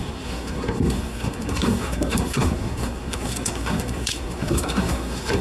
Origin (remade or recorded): remade